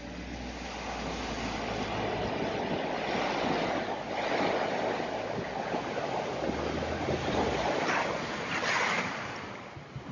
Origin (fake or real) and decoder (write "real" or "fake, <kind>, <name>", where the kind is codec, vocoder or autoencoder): real